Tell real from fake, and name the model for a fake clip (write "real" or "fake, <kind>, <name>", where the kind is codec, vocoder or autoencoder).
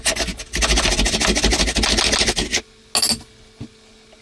real